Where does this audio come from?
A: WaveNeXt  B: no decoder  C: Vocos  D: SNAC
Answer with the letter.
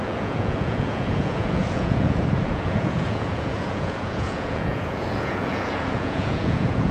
C